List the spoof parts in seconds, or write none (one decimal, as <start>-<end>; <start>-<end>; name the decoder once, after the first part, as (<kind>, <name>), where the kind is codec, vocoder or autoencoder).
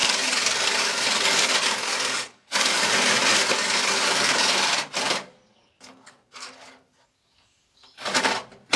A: 0.0-4.5 (codec, DAC); 5.5-8.3